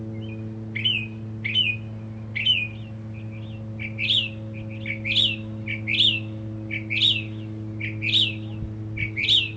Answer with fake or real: real